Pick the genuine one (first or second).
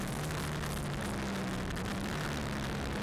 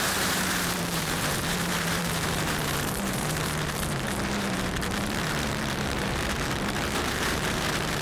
first